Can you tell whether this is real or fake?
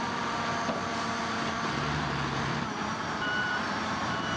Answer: fake